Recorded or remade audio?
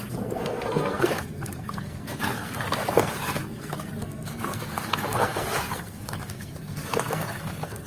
remade